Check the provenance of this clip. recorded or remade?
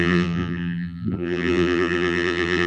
remade